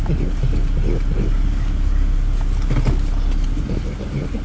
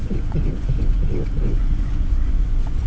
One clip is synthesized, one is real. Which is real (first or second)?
first